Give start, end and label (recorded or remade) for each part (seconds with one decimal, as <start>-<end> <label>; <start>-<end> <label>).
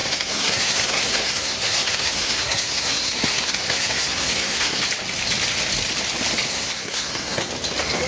0.0-4.8 remade; 4.8-6.5 recorded; 6.5-7.5 remade; 7.5-8.1 recorded